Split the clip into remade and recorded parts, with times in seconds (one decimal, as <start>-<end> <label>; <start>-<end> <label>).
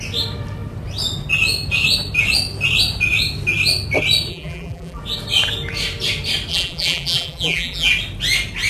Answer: 0.0-4.3 recorded; 4.3-5.0 remade; 5.0-6.5 recorded; 6.5-7.9 remade; 7.9-8.7 recorded